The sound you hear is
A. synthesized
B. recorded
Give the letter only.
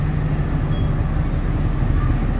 B